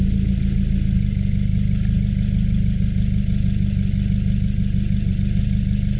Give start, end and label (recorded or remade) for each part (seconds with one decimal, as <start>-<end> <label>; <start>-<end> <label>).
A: 0.0-6.0 recorded